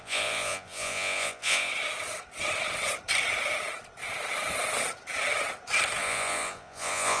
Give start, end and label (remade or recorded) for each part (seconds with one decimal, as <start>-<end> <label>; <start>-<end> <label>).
0.0-1.7 remade; 1.7-6.0 recorded; 6.0-7.2 remade